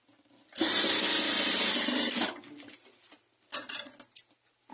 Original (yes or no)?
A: yes